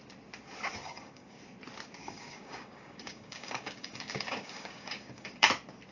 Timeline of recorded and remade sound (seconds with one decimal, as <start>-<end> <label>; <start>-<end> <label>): 0.0-0.8 recorded; 0.8-1.4 remade; 1.4-2.0 recorded; 2.0-5.5 remade; 5.5-5.9 recorded